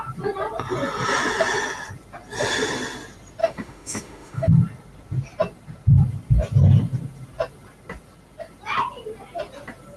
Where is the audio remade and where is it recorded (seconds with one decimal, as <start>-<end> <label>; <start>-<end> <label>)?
0.0-3.4 recorded; 3.4-4.5 remade; 4.5-10.0 recorded